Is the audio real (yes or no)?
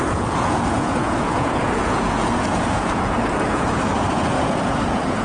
no